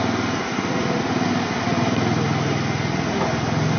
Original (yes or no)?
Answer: yes